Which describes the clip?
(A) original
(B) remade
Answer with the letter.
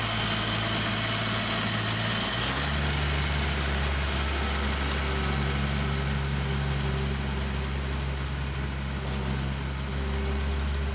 A